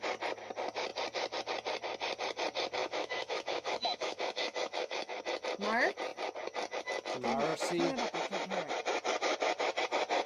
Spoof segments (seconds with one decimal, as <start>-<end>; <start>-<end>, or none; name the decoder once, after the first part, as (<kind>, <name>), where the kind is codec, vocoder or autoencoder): 2.8-5.2 (autoencoder, DAC-VAE)